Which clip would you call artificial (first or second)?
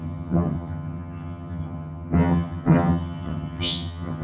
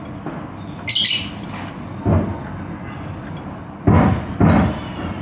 first